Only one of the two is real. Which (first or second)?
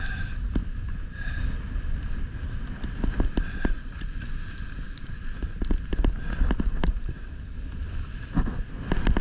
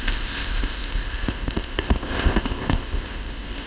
first